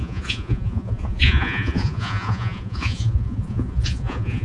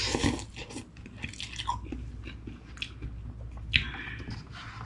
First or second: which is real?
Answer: second